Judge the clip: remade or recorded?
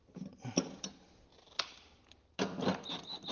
recorded